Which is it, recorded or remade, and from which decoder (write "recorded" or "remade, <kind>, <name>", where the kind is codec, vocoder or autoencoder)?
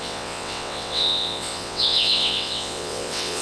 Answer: remade, vocoder, WaveNeXt